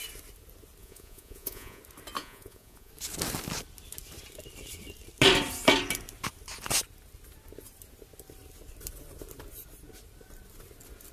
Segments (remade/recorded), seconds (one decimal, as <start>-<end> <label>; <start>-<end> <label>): 0.0-0.8 recorded; 0.8-1.8 remade; 1.8-2.2 recorded; 2.2-2.9 remade; 2.9-11.1 recorded